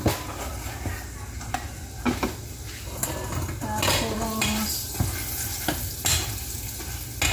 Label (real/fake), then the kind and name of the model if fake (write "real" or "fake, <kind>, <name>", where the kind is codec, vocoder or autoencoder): real